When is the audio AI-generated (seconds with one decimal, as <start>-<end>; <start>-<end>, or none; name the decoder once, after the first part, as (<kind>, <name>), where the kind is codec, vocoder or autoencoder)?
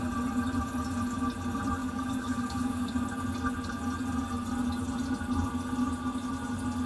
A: 1.8-2.9 (codec, DAC)